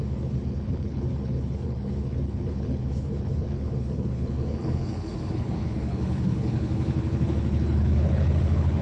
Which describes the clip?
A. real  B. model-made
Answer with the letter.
B